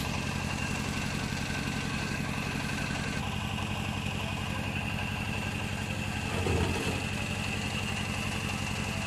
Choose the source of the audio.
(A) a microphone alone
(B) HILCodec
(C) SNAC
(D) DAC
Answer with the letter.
A